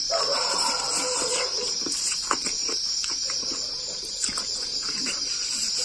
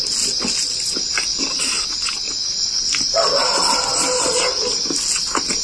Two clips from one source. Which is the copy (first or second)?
first